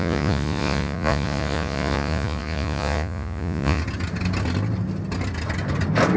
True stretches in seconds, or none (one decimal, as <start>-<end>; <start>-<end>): 3.8-6.2